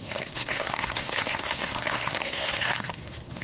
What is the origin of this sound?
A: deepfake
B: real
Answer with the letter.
A